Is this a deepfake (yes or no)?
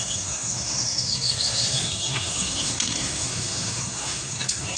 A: yes